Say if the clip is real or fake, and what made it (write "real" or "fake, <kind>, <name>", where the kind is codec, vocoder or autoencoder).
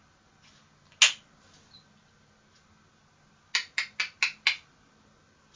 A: real